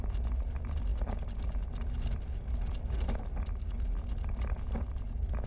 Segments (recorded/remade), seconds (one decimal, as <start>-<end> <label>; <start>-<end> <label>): 0.0-5.5 recorded